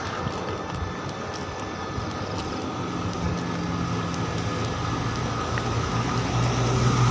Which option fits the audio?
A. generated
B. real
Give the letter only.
B